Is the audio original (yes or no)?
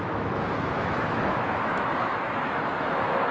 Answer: no